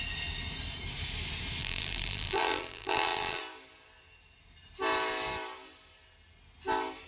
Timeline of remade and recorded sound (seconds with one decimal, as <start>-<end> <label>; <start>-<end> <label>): 0.0-1.6 recorded; 1.6-3.4 remade; 3.4-7.1 recorded